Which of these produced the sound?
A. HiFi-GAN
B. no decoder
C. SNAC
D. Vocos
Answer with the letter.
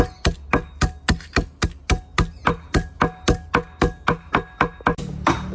B